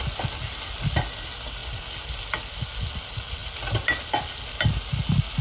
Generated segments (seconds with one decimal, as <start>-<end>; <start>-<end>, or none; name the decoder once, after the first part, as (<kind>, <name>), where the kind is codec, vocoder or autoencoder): none